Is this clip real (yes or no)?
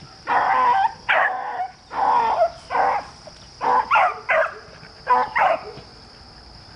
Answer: yes